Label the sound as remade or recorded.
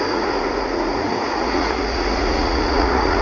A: remade